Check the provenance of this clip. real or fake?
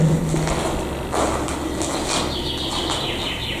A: real